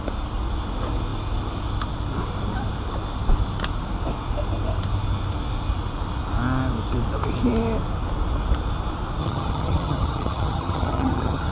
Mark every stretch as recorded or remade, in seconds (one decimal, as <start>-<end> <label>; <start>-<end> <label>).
0.0-9.2 recorded; 9.2-11.5 remade